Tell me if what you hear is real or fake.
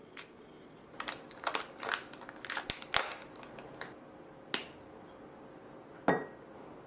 real